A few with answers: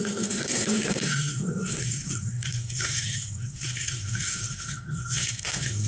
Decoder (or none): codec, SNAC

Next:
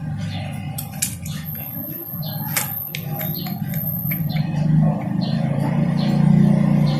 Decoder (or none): none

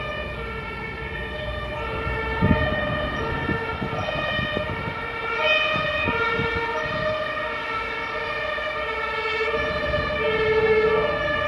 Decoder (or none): none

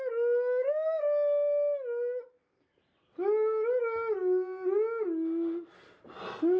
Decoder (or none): none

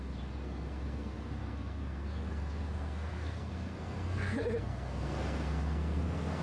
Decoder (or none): codec, SNAC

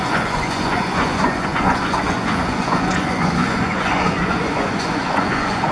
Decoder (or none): vocoder, Vocos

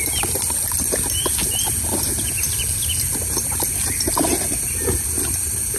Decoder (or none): none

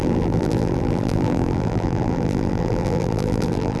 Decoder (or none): vocoder, BigVGAN v2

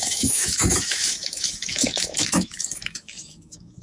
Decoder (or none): autoencoder, DAC-VAE